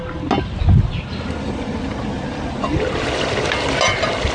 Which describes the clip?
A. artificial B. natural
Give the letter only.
B